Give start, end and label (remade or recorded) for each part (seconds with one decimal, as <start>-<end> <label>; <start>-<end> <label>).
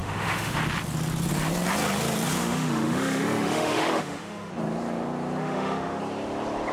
0.0-0.6 remade; 0.6-2.4 recorded; 2.4-4.5 remade; 4.5-5.4 recorded; 5.4-6.0 remade; 6.0-6.7 recorded